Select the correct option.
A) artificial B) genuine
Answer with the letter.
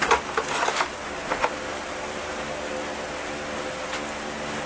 B